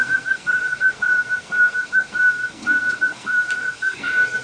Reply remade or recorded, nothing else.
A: remade